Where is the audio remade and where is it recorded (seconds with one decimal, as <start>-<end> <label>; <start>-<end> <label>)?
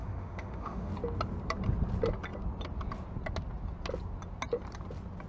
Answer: 0.0-0.9 remade; 0.9-5.3 recorded